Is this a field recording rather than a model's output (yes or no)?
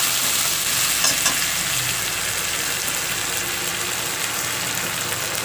yes